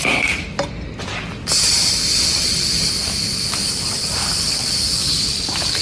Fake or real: fake